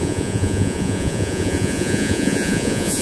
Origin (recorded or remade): remade